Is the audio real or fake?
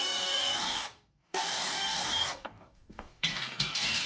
fake